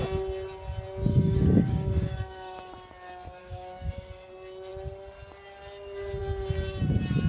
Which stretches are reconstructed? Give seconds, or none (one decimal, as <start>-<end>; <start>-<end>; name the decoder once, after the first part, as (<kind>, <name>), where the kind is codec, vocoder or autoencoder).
1.1-2.7 (codec, DAC); 3.4-4.3